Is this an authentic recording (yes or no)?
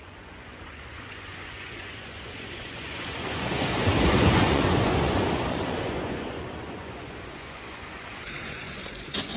no